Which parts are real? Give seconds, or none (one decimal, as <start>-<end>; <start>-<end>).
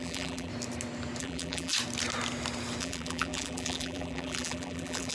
0.5-1.2; 1.7-2.8